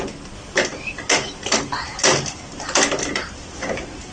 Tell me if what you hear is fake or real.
real